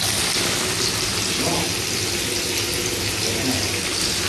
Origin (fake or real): real